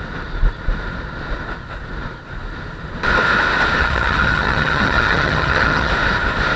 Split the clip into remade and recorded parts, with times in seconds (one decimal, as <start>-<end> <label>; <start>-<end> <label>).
0.0-3.8 recorded; 3.8-5.9 remade; 5.9-6.6 recorded